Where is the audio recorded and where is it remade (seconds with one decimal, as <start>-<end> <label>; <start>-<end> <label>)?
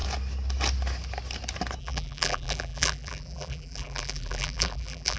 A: 0.0-1.8 recorded; 1.8-5.2 remade